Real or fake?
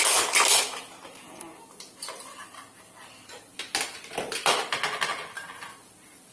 real